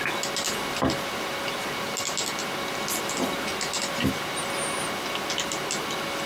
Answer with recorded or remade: recorded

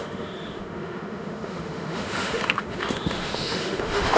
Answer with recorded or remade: remade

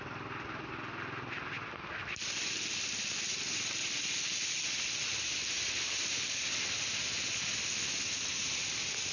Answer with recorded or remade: recorded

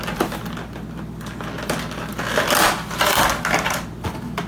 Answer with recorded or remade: recorded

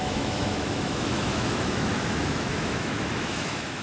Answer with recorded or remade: remade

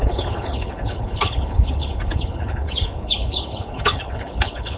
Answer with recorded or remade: remade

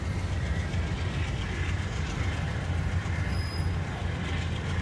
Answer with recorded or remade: recorded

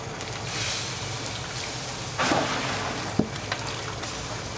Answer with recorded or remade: recorded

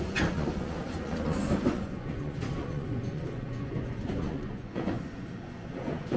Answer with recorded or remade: remade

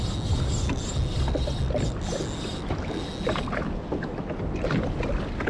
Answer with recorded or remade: recorded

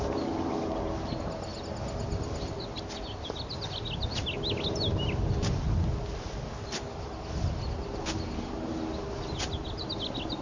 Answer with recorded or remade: recorded